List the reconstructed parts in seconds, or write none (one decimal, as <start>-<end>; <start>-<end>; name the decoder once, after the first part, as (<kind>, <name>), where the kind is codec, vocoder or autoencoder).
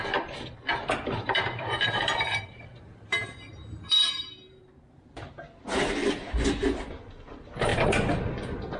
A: 0.7-5.3 (vocoder, BigVGAN v2); 7.7-8.3